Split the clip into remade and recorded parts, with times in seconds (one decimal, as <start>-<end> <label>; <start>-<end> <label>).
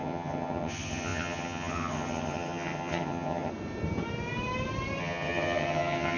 0.0-3.5 remade; 3.5-5.0 recorded; 5.0-6.2 remade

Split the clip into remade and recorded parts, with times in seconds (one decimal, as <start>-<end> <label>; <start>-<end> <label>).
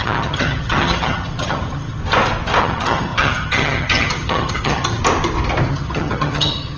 0.0-2.0 remade; 2.0-2.6 recorded; 2.6-5.0 remade; 5.0-5.7 recorded; 5.7-6.8 remade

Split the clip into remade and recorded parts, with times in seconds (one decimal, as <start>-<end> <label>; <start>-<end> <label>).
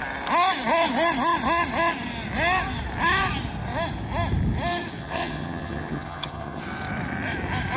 0.0-5.0 recorded; 5.0-6.6 remade; 6.6-7.8 recorded